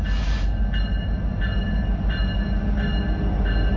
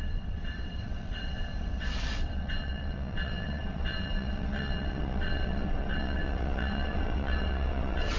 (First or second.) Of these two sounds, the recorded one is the first